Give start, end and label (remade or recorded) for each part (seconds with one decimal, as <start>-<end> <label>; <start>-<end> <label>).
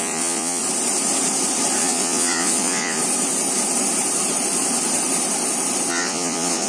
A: 0.0-0.6 remade; 0.6-1.8 recorded; 1.8-3.0 remade; 3.0-5.9 recorded; 5.9-6.7 remade